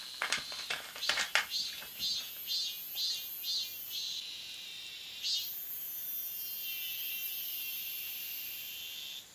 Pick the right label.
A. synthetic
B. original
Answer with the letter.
B